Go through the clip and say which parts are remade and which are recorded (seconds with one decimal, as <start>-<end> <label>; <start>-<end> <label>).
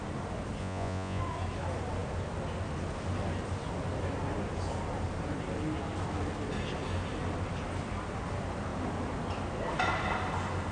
0.0-0.6 recorded; 0.6-1.2 remade; 1.2-10.7 recorded